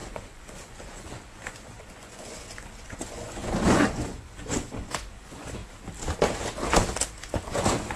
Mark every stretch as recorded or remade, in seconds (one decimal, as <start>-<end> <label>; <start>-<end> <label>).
0.0-5.6 remade; 5.6-7.2 recorded; 7.2-8.0 remade